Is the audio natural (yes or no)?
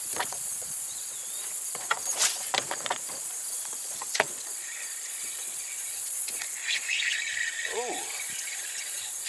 no